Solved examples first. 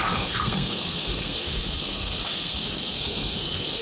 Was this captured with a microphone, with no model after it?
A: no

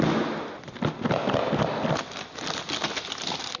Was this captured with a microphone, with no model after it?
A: yes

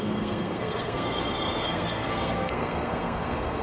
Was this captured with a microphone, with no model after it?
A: no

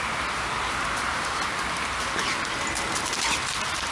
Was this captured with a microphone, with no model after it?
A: yes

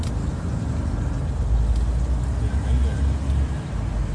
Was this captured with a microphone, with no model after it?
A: yes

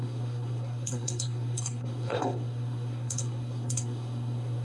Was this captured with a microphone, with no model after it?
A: no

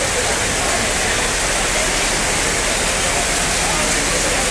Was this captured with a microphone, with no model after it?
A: yes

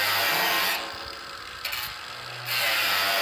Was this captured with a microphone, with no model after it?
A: yes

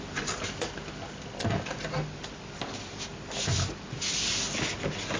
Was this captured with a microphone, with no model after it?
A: yes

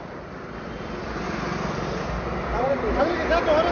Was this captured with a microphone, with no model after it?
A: yes